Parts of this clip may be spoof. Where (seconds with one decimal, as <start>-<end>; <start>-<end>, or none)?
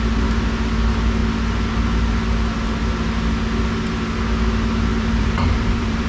4.9-6.1